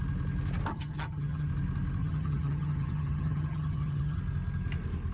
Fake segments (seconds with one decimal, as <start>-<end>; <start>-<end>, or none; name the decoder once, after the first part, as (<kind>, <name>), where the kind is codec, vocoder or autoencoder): 0.7-1.5 (vocoder, HiFi-GAN); 2.0-4.2